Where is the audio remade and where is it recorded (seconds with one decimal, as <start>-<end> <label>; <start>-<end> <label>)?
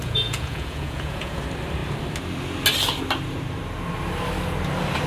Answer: 0.0-1.4 remade; 1.4-5.1 recorded